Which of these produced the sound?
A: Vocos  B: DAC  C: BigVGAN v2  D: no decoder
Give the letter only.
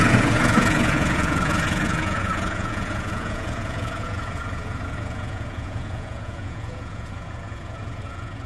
A